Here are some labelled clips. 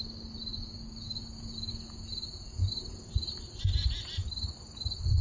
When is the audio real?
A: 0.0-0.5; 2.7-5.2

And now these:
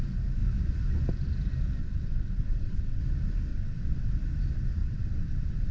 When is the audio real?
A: 0.0-1.8; 3.0-3.5; 4.1-4.8